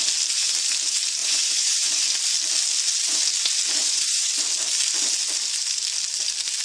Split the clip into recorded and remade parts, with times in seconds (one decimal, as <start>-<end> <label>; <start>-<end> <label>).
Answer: 0.0-1.2 recorded; 1.2-2.0 remade; 2.0-3.8 recorded; 3.8-4.3 remade; 4.3-6.6 recorded